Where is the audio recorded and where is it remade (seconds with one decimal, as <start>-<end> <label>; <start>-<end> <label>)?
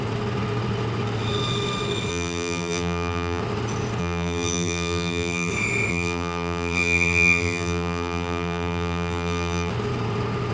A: 0.0-2.1 recorded; 2.1-3.4 remade; 3.4-4.0 recorded; 4.0-5.5 remade; 5.5-5.9 recorded; 5.9-9.7 remade; 9.7-10.5 recorded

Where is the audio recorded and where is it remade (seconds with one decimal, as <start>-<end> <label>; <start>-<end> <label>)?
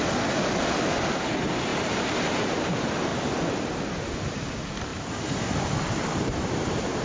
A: 0.0-1.7 recorded; 1.7-2.6 remade; 2.6-4.9 recorded; 4.9-7.0 remade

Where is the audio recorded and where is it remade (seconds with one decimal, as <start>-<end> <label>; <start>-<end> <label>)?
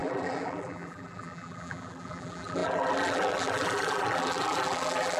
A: 0.0-5.2 remade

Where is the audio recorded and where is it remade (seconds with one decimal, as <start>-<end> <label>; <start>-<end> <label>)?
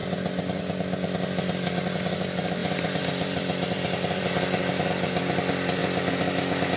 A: 0.0-2.6 recorded; 2.6-4.7 remade; 4.7-6.8 recorded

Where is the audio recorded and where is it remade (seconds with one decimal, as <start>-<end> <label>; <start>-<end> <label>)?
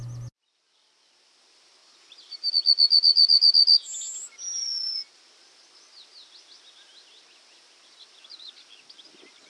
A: 0.0-1.8 recorded; 1.8-2.5 remade; 2.5-4.6 recorded; 4.6-5.2 remade; 5.2-9.5 recorded